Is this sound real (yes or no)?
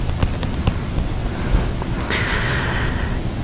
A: yes